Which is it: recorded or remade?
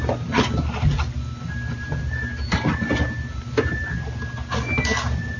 recorded